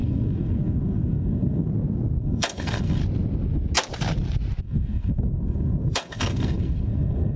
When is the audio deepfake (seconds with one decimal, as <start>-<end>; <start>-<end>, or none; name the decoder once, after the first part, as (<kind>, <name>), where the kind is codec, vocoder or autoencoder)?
0.0-1.7 (codec, SNAC); 2.2-3.0; 4.6-7.4